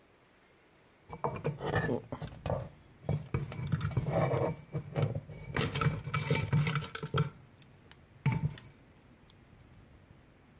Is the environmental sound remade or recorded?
recorded